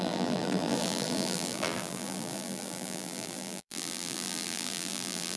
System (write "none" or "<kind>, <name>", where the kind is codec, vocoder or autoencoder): vocoder, BigVGAN v2